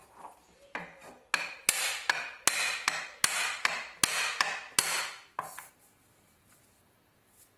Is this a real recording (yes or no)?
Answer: yes